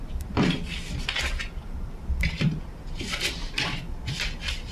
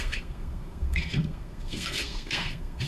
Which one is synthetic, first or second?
second